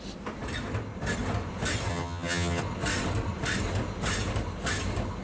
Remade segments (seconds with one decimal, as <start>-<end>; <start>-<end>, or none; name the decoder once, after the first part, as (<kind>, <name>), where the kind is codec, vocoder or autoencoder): 1.9-2.6 (vocoder, HiFi-GAN)